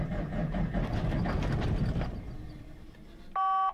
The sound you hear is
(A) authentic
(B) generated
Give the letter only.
A